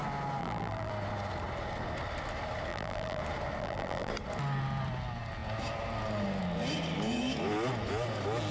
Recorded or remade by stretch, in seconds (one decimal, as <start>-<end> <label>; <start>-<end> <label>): 0.0-0.4 recorded; 0.4-0.9 remade; 0.9-2.7 recorded; 2.7-3.2 remade; 3.2-3.6 recorded; 3.6-4.1 remade; 4.1-8.5 recorded